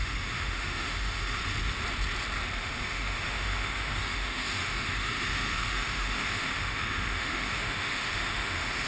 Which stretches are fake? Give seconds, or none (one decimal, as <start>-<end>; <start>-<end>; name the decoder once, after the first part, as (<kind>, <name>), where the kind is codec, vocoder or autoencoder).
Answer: 0.0-1.4 (autoencoder, DAC-VAE); 2.6-8.9